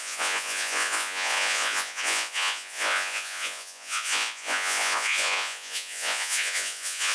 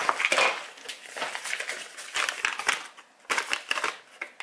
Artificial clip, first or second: first